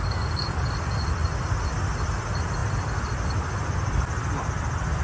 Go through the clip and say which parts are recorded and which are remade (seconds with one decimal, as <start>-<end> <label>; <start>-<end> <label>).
0.0-5.0 recorded